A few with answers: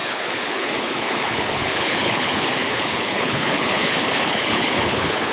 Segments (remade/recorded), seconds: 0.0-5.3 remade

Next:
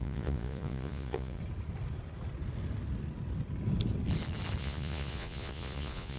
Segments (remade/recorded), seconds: 0.0-1.4 remade; 1.4-4.6 recorded; 4.6-6.2 remade

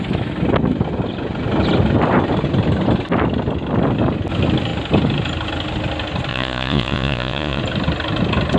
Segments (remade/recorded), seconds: 0.0-6.3 recorded; 6.3-7.6 remade; 7.6-8.6 recorded

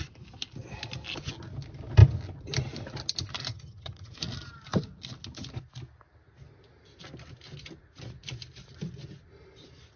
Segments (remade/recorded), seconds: 0.0-3.5 recorded; 3.5-4.1 remade; 4.1-10.0 recorded

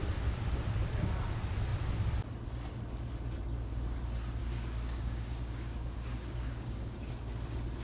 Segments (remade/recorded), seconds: 0.0-4.4 recorded; 4.4-7.1 remade; 7.1-7.8 recorded

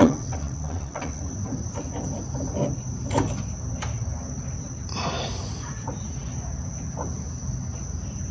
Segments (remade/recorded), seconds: 0.0-1.2 remade; 1.2-8.3 recorded

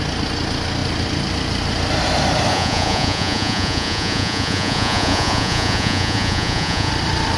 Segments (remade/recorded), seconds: 0.0-2.5 recorded; 2.5-6.9 remade; 6.9-7.4 recorded